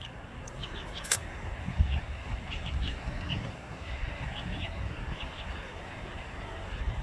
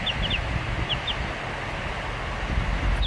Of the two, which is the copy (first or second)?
first